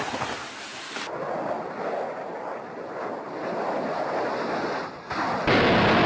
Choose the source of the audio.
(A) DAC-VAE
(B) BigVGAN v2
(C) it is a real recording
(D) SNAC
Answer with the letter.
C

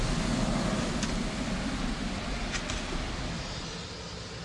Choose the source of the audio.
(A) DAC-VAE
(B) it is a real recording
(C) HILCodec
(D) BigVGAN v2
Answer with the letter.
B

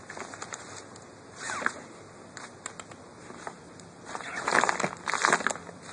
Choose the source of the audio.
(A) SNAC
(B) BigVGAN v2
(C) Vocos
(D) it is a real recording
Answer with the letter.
D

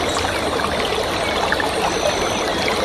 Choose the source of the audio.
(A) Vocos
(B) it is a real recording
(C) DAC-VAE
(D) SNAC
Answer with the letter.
B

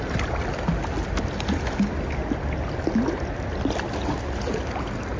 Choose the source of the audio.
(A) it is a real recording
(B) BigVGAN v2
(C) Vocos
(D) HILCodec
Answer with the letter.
A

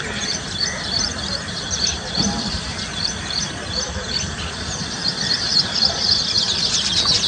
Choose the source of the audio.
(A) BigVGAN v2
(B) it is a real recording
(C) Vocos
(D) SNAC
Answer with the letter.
A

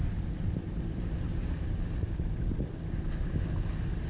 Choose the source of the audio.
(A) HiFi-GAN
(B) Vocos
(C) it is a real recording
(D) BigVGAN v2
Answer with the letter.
C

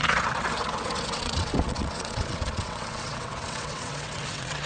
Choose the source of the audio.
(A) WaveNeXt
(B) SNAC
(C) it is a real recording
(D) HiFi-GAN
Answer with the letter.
A